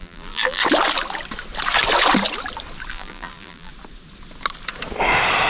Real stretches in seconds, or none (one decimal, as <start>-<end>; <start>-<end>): 0.6-2.9; 3.7-5.5